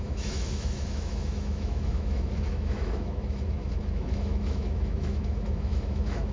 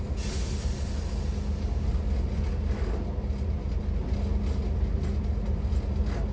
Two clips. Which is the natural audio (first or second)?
second